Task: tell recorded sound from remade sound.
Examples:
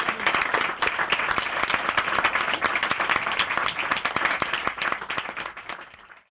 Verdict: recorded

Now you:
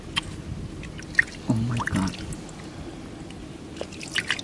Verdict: recorded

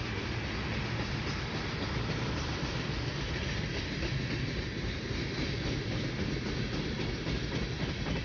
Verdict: recorded